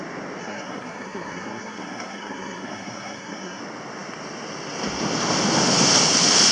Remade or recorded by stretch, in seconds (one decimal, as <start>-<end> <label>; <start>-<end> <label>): 0.0-0.4 recorded; 0.4-3.6 remade; 3.6-6.5 recorded